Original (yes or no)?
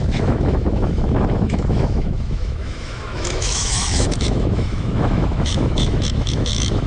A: no